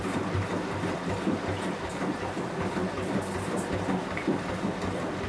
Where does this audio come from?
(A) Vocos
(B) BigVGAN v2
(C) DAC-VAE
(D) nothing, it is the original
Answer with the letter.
D